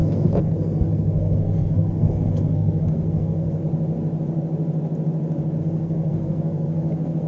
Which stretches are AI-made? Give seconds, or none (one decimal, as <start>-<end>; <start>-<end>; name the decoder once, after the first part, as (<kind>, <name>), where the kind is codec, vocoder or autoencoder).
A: 0.0-3.6 (codec, SNAC); 5.6-7.3